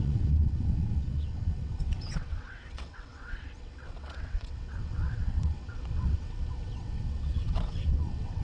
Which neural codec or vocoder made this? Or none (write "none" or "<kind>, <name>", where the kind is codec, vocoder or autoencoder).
vocoder, WaveNeXt